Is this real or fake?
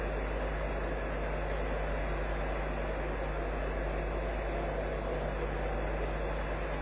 real